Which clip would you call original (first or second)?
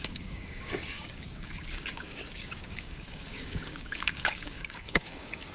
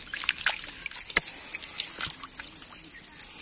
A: second